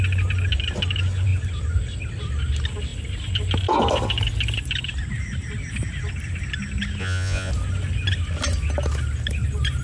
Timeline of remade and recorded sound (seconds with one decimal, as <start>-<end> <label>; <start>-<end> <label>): 0.0-7.0 recorded; 7.0-7.5 remade; 7.5-9.8 recorded